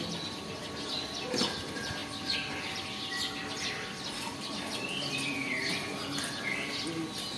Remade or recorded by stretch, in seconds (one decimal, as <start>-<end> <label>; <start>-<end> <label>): 0.0-7.4 recorded